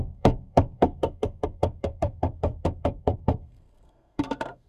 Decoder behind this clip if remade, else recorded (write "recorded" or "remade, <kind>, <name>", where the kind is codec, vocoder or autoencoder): remade, codec, SNAC